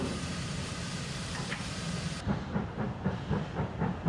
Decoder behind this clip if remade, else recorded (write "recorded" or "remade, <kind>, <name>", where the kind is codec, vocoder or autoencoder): remade, vocoder, BigVGAN v2